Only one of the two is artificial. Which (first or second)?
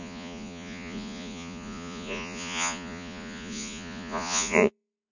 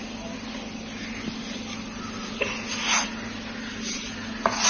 first